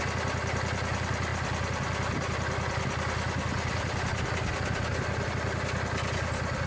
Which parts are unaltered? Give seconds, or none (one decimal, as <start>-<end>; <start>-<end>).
0.0-6.7